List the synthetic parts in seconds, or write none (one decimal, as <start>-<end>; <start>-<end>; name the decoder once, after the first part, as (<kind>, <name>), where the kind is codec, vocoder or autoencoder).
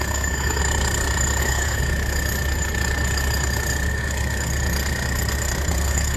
0.0-0.6 (codec, SNAC); 1.4-1.8; 3.9-4.5; 5.7-6.2